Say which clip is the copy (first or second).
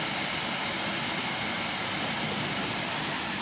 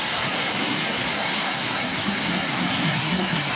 second